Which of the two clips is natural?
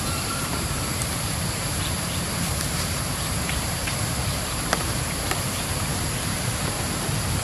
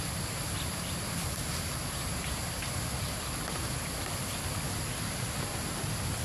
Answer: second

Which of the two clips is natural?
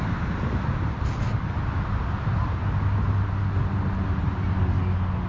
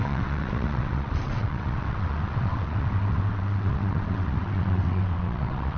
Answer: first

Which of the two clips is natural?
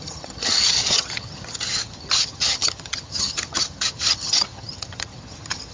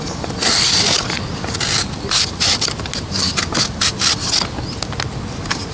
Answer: second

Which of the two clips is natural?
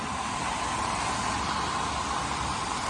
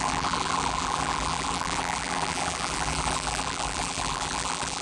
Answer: first